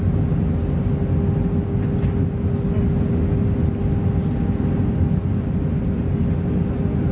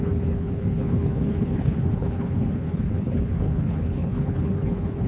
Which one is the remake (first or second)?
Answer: second